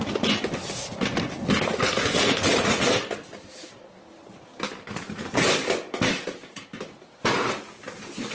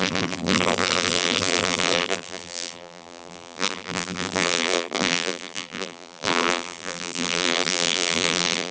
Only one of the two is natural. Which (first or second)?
first